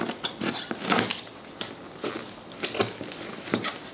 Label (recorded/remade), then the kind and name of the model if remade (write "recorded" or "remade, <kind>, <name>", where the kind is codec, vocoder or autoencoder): recorded